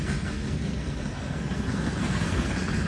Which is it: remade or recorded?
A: remade